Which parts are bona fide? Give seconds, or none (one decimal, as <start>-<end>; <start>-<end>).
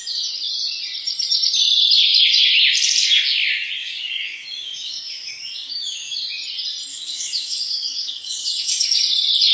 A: 0.0-3.8; 6.2-6.9; 9.0-9.5